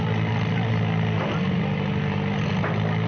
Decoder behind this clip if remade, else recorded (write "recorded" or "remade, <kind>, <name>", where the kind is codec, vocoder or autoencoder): recorded